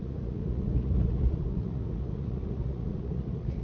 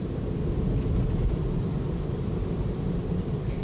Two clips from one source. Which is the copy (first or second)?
first